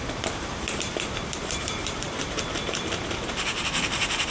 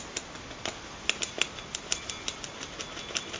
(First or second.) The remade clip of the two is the first